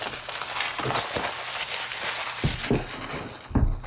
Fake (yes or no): no